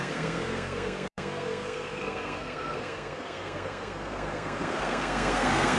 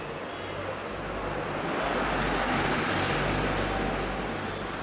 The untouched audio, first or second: second